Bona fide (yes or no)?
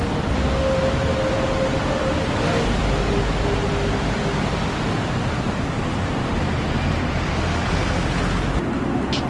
yes